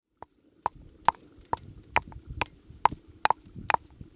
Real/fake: real